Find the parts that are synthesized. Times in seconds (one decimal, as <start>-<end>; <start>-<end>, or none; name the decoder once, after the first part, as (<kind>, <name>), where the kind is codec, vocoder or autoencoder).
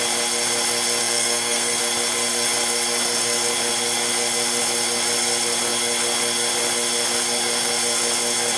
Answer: 1.0-1.8 (codec, SNAC)